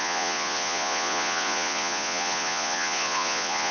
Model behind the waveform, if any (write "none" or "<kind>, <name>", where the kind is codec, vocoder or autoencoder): vocoder, Vocos